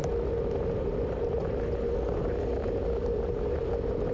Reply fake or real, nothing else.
real